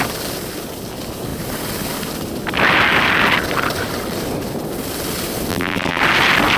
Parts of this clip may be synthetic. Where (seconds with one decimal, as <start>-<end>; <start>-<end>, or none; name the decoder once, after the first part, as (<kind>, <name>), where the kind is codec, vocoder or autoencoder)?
5.5-6.0 (vocoder, BigVGAN v2)